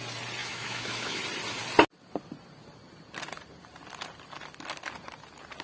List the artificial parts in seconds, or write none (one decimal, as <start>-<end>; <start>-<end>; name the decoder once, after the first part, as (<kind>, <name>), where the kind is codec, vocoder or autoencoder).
0.4-1.2 (autoencoder, DAC-VAE)